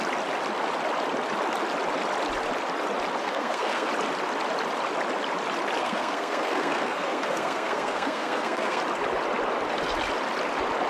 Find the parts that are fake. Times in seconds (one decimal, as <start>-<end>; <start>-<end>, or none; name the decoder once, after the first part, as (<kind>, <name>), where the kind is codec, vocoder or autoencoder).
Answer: 3.2-3.9 (codec, SNAC); 5.8-8.8